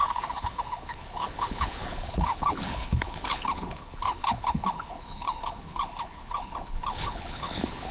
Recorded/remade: remade